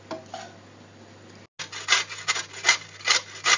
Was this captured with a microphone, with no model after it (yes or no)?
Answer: yes